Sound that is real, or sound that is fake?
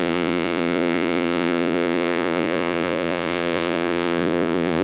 fake